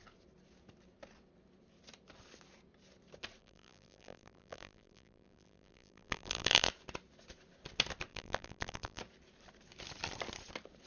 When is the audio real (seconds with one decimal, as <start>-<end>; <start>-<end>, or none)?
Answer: 0.0-3.4; 6.7-8.1; 9.0-10.9